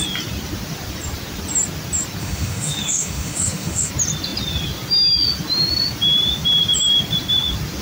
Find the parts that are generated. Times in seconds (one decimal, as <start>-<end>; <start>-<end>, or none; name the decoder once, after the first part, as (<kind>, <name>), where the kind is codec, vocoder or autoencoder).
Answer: 2.2-3.9 (autoencoder, DAC-VAE)

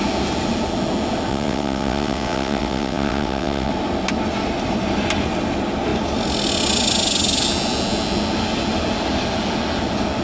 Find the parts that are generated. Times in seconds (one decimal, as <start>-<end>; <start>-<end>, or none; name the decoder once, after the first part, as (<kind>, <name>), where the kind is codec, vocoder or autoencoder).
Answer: 1.3-3.7 (vocoder, WaveNeXt)